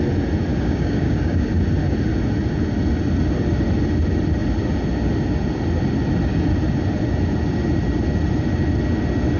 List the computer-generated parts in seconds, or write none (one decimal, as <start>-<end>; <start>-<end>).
0.5-1.5